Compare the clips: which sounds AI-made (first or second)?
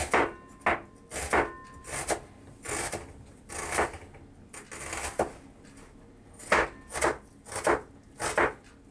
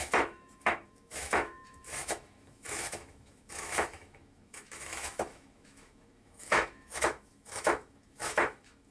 second